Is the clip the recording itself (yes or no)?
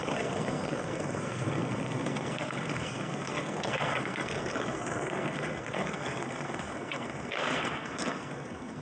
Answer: no